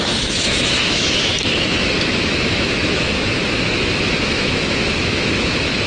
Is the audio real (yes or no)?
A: no